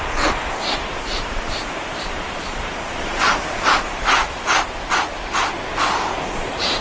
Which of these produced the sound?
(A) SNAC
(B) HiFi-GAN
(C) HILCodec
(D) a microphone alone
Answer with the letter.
D